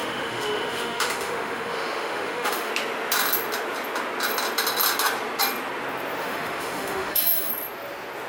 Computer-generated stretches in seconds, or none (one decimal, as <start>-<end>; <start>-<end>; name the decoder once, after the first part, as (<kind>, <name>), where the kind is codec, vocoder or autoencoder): 0.0-2.7 (autoencoder, DAC-VAE); 6.2-7.5